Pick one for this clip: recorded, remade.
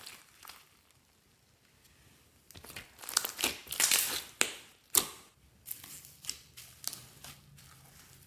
recorded